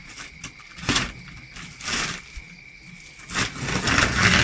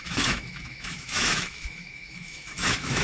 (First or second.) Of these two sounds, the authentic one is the first